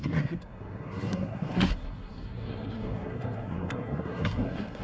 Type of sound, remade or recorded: remade